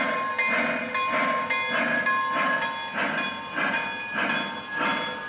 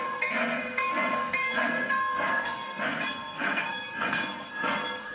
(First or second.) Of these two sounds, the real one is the first